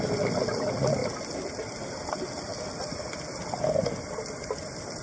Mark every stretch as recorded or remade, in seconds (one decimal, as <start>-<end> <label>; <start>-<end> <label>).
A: 0.0-5.0 recorded